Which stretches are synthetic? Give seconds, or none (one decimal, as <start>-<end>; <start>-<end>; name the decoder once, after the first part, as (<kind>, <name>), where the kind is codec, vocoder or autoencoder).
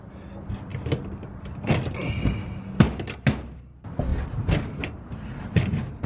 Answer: none